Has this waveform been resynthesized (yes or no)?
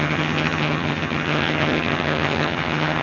yes